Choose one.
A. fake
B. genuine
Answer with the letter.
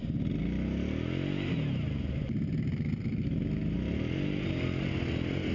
B